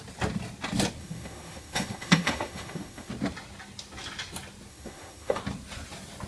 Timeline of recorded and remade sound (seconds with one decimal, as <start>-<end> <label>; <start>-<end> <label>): 0.0-1.0 recorded; 1.0-3.1 remade; 3.1-4.7 recorded; 4.7-5.4 remade; 5.4-6.3 recorded